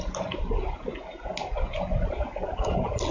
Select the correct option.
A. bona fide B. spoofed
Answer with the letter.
A